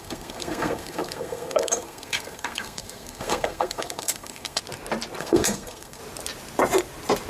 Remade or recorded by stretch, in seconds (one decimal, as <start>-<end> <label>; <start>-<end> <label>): 0.0-4.6 remade; 4.6-5.2 recorded; 5.2-6.0 remade; 6.0-7.3 recorded